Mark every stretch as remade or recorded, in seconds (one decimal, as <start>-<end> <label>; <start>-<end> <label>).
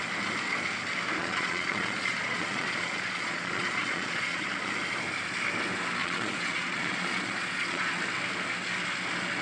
0.0-1.2 recorded; 1.2-4.7 remade; 4.7-6.0 recorded; 6.0-8.0 remade; 8.0-9.4 recorded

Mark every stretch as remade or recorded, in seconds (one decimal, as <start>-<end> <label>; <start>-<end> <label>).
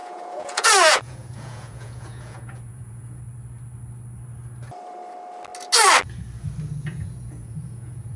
0.0-3.2 remade; 3.2-6.8 recorded; 6.8-8.2 remade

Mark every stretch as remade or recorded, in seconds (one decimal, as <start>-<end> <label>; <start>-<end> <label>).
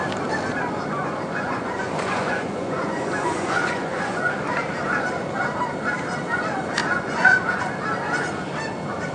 0.0-0.9 recorded; 0.9-4.3 remade; 4.3-6.8 recorded; 6.8-7.6 remade; 7.6-9.1 recorded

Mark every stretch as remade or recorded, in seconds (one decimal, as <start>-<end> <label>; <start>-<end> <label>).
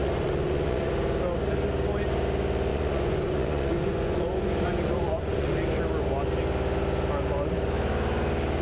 0.0-0.9 remade; 0.9-2.7 recorded; 2.7-5.5 remade; 5.5-8.6 recorded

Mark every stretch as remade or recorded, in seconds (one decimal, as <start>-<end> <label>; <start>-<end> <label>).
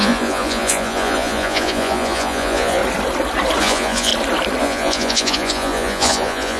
0.0-2.8 remade; 2.8-3.6 recorded; 3.6-4.1 remade; 4.1-4.6 recorded; 4.6-6.6 remade